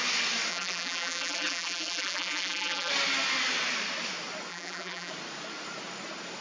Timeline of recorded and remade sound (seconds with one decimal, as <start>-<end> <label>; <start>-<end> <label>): 0.0-0.5 recorded; 0.5-2.9 remade; 2.9-4.5 recorded; 4.5-5.1 remade; 5.1-6.4 recorded